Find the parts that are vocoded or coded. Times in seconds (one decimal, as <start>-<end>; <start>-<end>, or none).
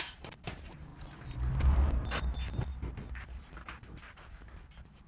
0.0-0.9; 1.6-2.7